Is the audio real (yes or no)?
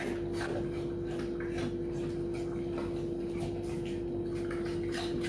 yes